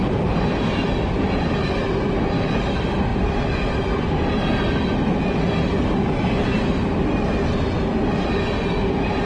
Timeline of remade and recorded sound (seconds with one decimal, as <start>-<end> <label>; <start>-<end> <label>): 0.0-9.3 recorded